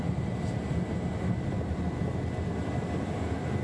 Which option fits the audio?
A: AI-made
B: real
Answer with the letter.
B